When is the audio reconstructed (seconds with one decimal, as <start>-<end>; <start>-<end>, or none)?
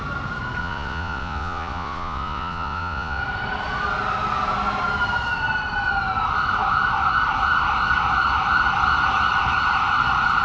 0.6-3.2